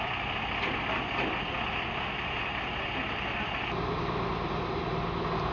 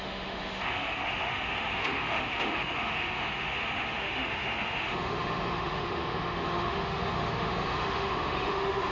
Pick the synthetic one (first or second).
second